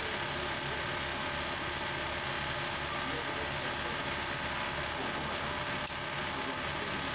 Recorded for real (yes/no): yes